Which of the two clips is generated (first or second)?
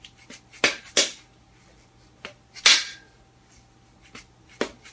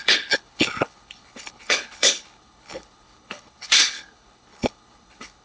second